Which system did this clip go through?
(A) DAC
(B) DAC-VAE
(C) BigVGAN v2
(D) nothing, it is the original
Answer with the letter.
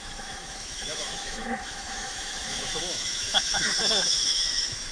B